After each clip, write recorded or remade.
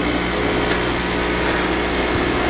recorded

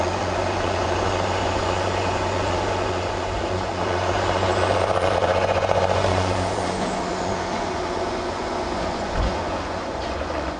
remade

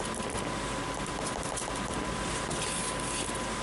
recorded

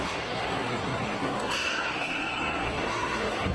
remade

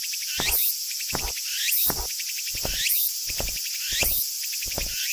recorded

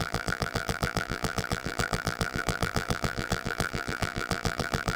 remade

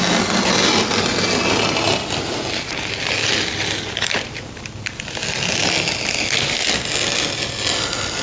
recorded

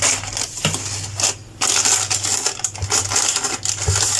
recorded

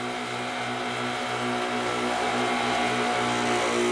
recorded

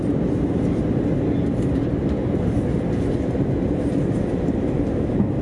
recorded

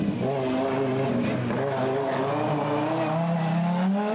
recorded